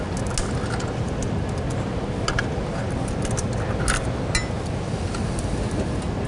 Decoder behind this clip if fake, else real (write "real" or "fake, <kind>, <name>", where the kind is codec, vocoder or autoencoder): real